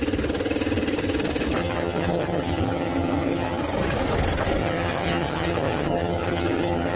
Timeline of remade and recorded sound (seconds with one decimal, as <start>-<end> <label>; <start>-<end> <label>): 0.0-1.6 recorded; 1.6-3.6 remade; 3.6-4.6 recorded; 4.6-7.0 remade